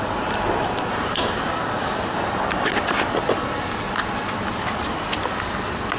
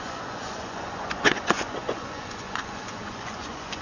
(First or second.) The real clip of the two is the first